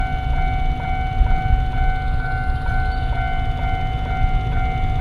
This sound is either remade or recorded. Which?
recorded